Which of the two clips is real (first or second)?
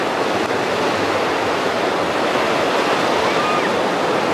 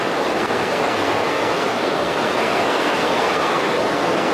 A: first